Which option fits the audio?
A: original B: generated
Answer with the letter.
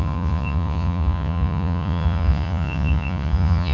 B